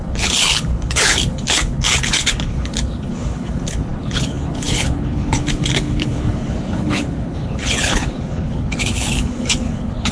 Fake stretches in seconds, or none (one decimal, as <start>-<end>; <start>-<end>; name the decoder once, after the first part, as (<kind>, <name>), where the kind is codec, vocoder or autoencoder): 0.0-10.1 (codec, HILCodec)